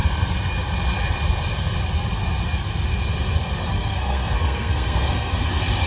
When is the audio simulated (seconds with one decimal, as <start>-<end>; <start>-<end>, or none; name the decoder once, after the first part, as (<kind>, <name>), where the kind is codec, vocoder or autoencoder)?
3.7-5.3 (codec, SNAC)